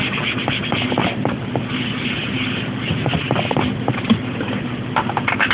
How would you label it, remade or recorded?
recorded